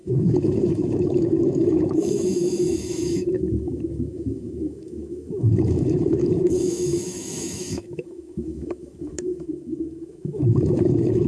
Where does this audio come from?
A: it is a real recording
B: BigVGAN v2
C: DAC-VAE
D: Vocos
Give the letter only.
C